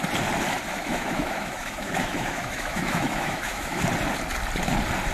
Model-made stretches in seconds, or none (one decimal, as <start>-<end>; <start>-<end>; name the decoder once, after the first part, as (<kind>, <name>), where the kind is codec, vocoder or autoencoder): 0.7-3.8 (autoencoder, DAC-VAE)